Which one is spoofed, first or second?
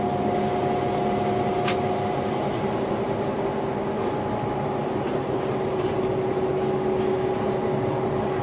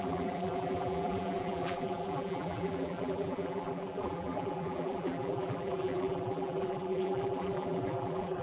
second